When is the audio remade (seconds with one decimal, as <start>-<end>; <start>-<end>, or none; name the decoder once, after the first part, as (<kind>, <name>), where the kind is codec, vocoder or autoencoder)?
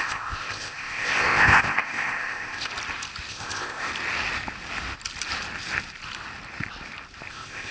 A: 0.0-2.7 (codec, ZipCodec); 3.3-3.9; 7.3-7.7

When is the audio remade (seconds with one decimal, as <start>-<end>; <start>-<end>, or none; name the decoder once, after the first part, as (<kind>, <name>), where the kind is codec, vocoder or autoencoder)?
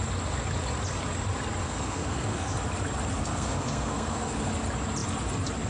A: 1.6-2.5 (codec, SNAC); 3.2-4.5